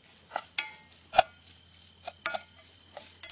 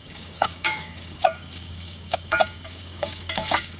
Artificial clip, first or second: second